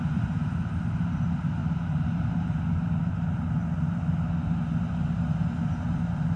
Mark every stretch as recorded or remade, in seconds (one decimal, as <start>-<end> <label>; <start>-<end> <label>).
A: 0.0-1.6 recorded; 1.6-2.6 remade; 2.6-6.4 recorded